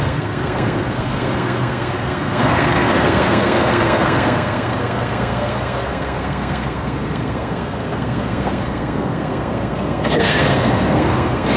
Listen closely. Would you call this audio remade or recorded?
remade